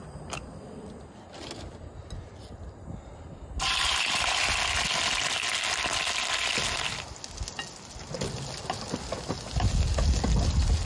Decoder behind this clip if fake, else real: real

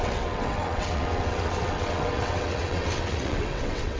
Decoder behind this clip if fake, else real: fake, vocoder, WaveNeXt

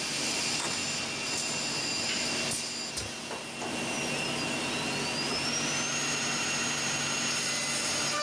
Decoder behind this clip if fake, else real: real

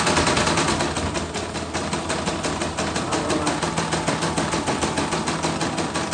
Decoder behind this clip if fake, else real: real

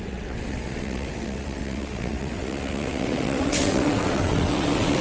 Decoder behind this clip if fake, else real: fake, vocoder, WaveNeXt